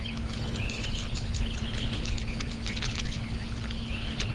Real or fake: fake